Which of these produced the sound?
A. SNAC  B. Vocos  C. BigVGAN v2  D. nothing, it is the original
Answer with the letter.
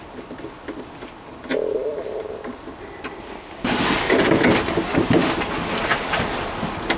D